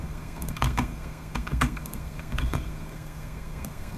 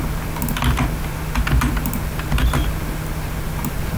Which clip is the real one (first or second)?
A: second